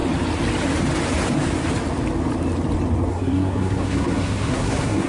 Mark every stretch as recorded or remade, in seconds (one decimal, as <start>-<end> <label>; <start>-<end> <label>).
0.0-3.1 recorded; 3.1-5.1 remade